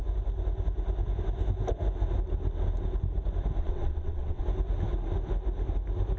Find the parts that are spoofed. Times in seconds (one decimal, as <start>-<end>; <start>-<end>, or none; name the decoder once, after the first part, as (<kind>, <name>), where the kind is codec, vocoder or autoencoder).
3.6-4.4 (vocoder, WaveNeXt)